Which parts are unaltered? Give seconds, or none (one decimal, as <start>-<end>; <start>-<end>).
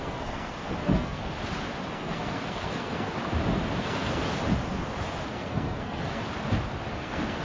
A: 1.2-1.9; 3.1-3.8; 4.2-5.3; 6.2-6.9